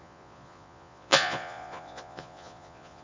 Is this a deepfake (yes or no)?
yes